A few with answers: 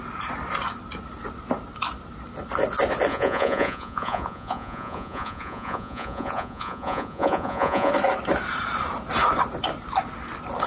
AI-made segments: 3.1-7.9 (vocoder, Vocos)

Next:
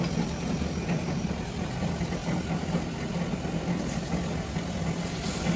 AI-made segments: none

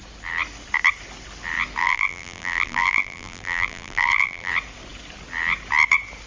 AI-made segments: 1.8-4.5 (vocoder, BigVGAN v2)